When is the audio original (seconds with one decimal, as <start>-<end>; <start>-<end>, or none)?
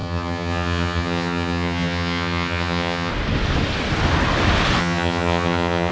3.1-4.8